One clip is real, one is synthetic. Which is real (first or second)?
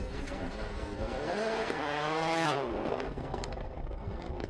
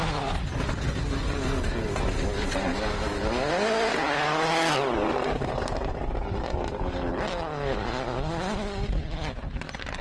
second